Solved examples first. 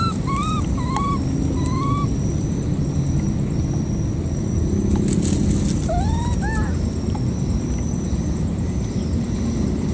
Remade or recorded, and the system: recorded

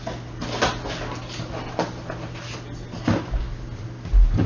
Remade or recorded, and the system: recorded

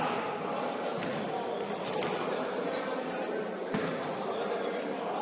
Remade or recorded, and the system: recorded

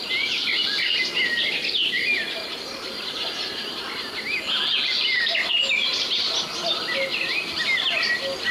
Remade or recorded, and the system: recorded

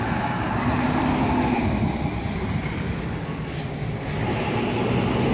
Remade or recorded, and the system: recorded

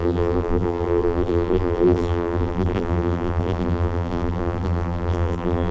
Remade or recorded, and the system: remade, vocoder, BigVGAN v2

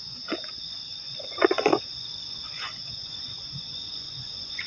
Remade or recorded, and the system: remade, vocoder, Vocos